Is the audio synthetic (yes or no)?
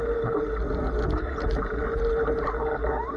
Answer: no